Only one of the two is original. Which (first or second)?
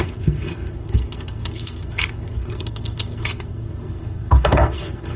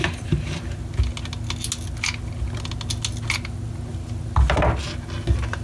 second